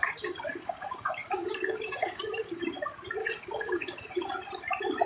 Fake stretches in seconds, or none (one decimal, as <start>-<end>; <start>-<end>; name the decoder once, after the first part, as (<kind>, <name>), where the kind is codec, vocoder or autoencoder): 0.0-2.6 (codec, DAC); 3.2-4.3